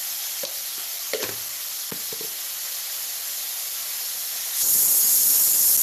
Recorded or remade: recorded